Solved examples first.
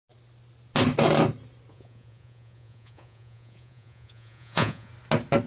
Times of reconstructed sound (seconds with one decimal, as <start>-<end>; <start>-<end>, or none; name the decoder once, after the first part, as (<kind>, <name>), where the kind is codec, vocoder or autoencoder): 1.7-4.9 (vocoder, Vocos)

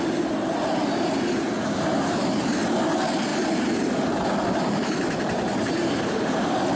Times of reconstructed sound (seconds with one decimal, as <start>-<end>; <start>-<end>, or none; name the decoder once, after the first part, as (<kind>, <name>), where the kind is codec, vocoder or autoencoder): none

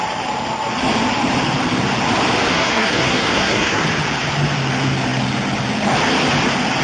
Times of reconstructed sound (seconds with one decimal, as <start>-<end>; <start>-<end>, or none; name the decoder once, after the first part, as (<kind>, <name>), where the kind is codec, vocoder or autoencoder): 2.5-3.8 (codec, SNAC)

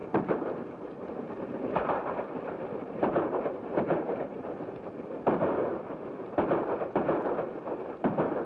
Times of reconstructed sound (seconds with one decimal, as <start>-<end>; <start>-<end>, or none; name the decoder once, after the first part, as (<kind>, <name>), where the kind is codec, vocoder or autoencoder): 0.0-4.4 (vocoder, BigVGAN v2)